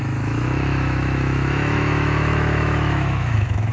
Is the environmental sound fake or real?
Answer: fake